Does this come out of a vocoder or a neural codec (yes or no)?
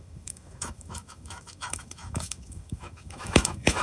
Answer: yes